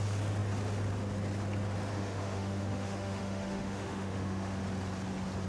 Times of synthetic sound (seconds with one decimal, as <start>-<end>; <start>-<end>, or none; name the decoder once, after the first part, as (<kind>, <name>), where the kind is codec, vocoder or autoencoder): 1.9-4.6 (autoencoder, DAC-VAE)